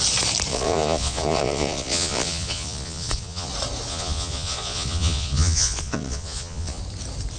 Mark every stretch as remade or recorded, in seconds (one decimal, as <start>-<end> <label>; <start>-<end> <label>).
0.0-0.5 recorded; 0.5-3.5 remade; 3.5-3.9 recorded; 3.9-6.8 remade; 6.8-7.4 recorded